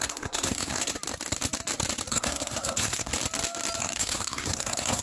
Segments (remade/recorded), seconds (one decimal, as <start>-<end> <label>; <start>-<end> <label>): 0.0-0.9 remade; 0.9-2.1 recorded; 2.1-3.1 remade; 3.1-3.8 recorded; 3.8-5.0 remade